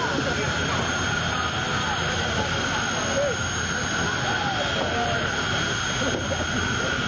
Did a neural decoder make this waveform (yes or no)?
no